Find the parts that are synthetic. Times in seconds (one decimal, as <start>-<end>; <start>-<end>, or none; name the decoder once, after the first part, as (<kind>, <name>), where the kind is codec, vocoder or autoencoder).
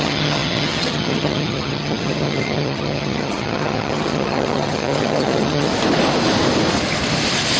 0.0-5.7 (vocoder, HiFi-GAN)